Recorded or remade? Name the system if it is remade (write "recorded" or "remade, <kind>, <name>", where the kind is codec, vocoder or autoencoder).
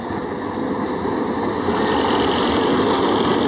recorded